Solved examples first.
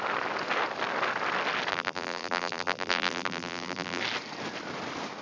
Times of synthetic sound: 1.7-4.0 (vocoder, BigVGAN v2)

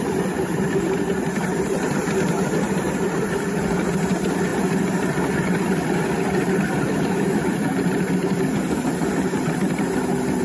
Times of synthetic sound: 0.0-10.4 (vocoder, BigVGAN v2)

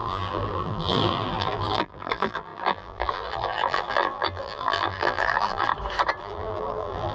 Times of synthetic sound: 0.0-5.7 (vocoder, BigVGAN v2); 6.2-7.1

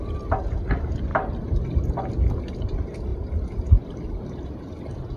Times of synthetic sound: 1.1-2.4 (vocoder, BigVGAN v2); 3.1-4.6

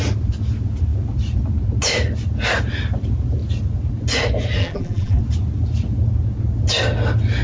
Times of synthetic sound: 4.6-5.2 (vocoder, BigVGAN v2)

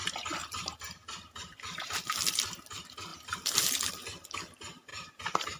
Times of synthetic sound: 0.4-2.2 (vocoder, BigVGAN v2); 3.1-3.9; 4.9-5.6

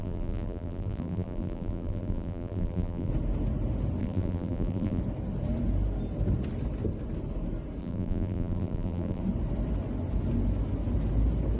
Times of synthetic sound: 0.0-3.1 (vocoder, BigVGAN v2); 4.0-5.0; 7.8-9.2